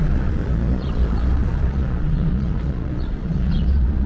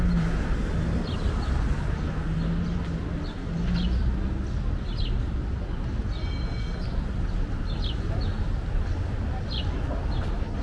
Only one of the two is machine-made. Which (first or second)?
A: first